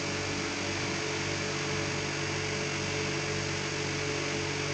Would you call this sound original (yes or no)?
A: yes